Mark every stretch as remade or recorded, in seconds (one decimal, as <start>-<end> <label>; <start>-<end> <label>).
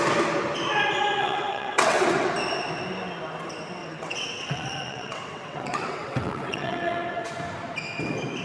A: 0.0-1.2 recorded; 1.2-2.3 remade; 2.3-3.8 recorded; 3.8-7.3 remade; 7.3-8.4 recorded